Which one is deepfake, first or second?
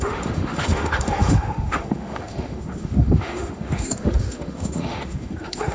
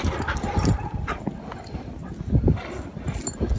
first